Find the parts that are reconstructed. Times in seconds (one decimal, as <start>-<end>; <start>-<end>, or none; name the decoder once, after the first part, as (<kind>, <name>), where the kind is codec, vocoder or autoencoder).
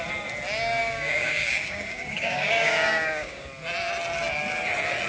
0.8-3.5 (codec, DAC)